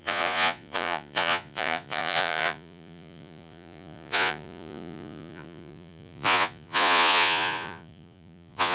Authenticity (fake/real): fake